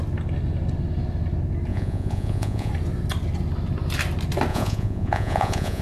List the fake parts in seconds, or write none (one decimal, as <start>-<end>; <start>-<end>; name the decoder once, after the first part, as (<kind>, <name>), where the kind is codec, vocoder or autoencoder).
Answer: 1.7-2.7 (vocoder, Vocos); 4.5-5.8